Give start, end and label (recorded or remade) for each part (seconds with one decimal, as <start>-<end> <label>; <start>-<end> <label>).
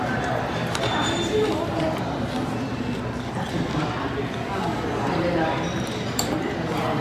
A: 0.0-1.0 remade; 1.0-5.2 recorded; 5.2-7.0 remade